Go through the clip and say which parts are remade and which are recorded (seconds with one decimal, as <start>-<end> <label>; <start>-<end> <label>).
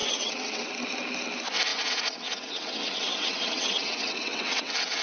0.0-0.7 remade; 0.7-1.7 recorded; 1.7-5.0 remade